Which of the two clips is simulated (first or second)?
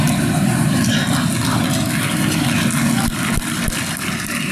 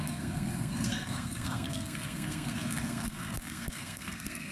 second